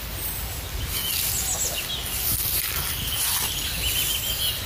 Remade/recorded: remade